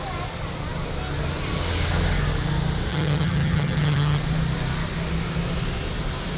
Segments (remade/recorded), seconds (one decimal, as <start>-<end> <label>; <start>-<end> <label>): 0.0-2.9 recorded; 2.9-4.2 remade; 4.2-6.4 recorded